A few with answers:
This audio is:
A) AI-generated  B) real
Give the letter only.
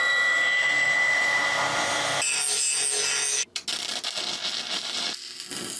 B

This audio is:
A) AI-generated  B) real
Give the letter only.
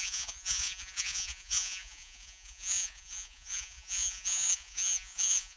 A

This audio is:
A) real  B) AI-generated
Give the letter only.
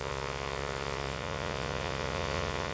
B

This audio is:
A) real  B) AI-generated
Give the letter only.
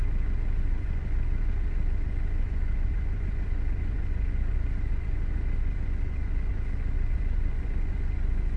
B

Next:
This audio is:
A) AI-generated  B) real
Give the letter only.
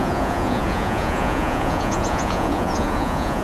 A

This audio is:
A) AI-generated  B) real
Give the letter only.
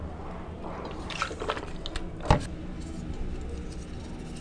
B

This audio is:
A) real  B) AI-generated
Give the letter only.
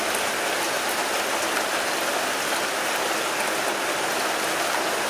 A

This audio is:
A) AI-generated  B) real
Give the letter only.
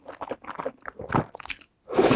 B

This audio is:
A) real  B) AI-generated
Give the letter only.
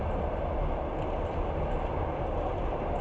A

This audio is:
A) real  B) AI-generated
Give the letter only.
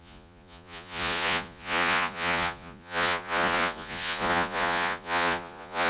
B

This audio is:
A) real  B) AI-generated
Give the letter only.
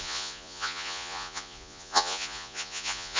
B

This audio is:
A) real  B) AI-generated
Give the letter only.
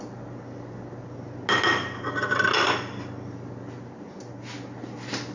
A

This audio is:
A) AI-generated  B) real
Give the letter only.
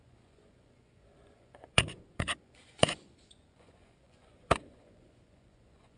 A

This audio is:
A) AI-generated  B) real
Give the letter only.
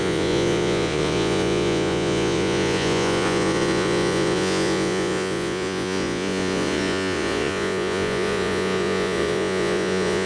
A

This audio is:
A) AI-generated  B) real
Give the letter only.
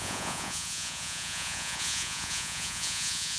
A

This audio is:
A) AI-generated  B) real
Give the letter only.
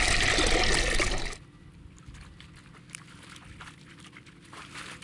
B